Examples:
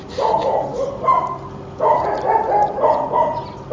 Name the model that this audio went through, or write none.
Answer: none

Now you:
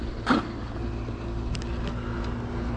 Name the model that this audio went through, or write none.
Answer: none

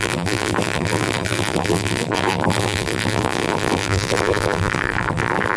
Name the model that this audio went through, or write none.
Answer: vocoder, BigVGAN v2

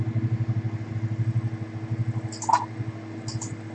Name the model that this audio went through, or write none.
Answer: none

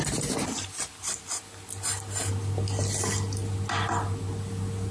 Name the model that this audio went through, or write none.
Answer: none